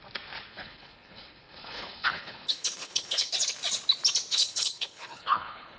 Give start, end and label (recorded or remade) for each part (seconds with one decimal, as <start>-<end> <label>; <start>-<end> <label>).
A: 0.0-0.5 recorded; 0.5-3.3 remade; 3.3-4.3 recorded; 4.3-5.8 remade

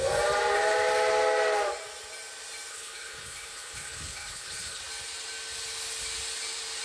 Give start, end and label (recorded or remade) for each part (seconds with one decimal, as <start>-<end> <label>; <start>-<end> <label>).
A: 0.0-2.7 recorded; 2.7-4.8 remade; 4.8-6.8 recorded

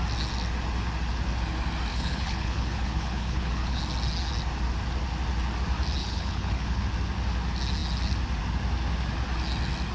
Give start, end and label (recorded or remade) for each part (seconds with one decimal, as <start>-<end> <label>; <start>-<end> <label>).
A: 0.0-1.9 recorded; 1.9-3.8 remade; 3.8-6.0 recorded; 6.0-6.8 remade; 6.8-9.9 recorded

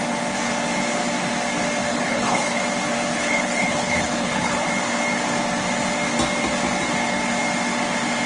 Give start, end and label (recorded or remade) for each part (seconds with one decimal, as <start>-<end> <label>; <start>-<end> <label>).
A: 0.0-1.9 recorded; 1.9-2.6 remade; 2.6-3.1 recorded; 3.1-4.7 remade; 4.7-8.3 recorded

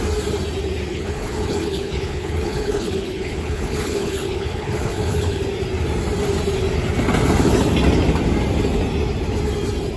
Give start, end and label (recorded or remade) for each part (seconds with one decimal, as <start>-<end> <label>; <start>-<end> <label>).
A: 0.0-0.9 recorded; 0.9-5.4 remade; 5.4-10.0 recorded

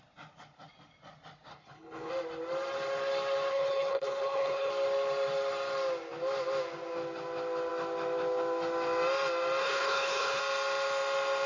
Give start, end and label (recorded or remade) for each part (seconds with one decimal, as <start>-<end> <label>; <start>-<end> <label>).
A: 0.0-1.5 recorded; 1.5-2.1 remade; 2.1-3.5 recorded; 3.5-4.7 remade; 4.7-9.6 recorded; 9.6-10.4 remade; 10.4-11.5 recorded